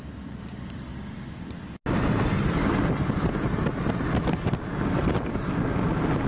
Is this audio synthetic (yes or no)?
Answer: no